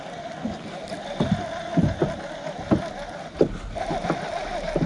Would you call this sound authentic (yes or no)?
yes